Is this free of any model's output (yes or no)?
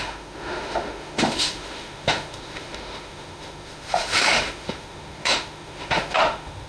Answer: no